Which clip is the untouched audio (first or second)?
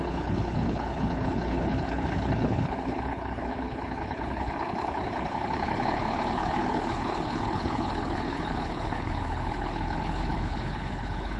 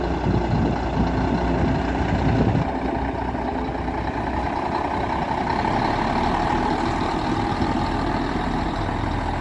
second